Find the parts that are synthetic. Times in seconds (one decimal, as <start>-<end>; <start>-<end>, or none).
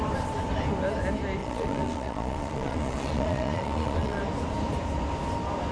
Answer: 1.4-4.2